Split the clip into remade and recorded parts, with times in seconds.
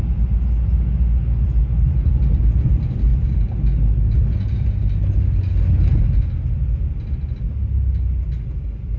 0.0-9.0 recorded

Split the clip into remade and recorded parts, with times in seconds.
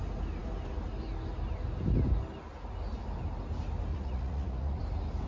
0.0-3.9 recorded; 3.9-4.8 remade; 4.8-5.3 recorded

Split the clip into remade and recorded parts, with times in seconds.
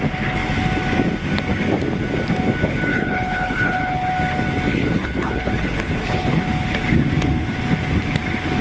0.0-2.9 recorded; 2.9-4.1 remade; 4.1-4.7 recorded; 4.7-6.4 remade; 6.4-8.6 recorded